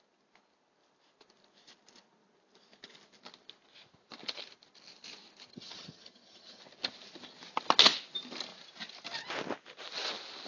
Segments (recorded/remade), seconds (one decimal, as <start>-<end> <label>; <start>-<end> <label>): 0.0-5.5 recorded; 5.5-6.6 remade; 6.6-10.5 recorded

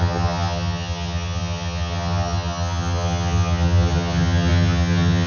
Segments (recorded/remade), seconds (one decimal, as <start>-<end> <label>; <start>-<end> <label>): 0.0-5.3 remade